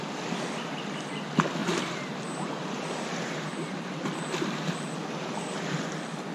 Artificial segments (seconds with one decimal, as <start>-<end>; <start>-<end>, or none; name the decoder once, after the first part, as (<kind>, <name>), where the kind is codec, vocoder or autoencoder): none